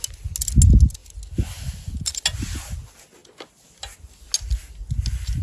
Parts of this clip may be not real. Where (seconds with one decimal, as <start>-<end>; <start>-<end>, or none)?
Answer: none